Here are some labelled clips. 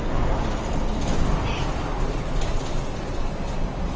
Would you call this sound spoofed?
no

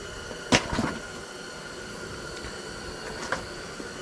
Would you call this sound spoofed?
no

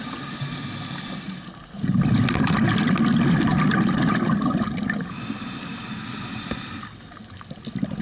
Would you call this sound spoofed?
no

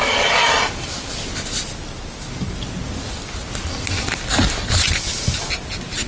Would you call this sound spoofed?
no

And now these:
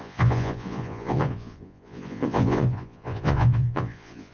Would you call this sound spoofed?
yes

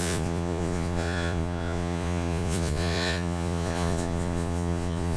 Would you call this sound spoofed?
yes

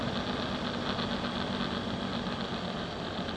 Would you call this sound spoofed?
no